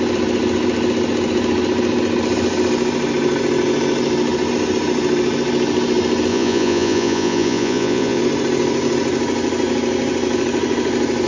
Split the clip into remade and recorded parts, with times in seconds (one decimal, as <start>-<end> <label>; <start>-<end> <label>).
0.0-6.3 recorded; 6.3-8.2 remade; 8.2-11.3 recorded